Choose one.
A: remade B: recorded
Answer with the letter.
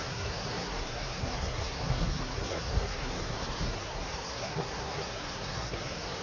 A